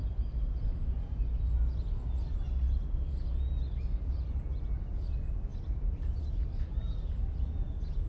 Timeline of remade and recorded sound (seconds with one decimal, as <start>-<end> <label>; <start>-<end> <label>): 0.0-8.1 recorded